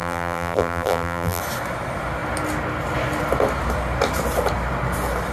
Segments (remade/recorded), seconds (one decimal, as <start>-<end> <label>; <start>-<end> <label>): 0.0-1.4 remade; 1.4-5.3 recorded